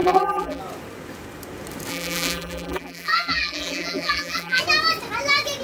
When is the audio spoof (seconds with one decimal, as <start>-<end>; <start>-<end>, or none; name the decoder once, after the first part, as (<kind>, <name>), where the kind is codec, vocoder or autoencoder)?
0.0-0.6 (vocoder, BigVGAN v2); 1.9-4.6